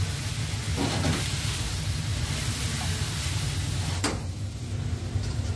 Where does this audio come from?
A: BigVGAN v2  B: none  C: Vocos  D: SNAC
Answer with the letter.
B